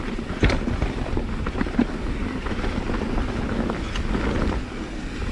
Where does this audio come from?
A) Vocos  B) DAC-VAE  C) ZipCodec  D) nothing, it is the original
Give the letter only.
D